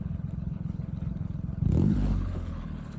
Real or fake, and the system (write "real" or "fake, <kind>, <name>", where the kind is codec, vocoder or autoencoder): fake, codec, HILCodec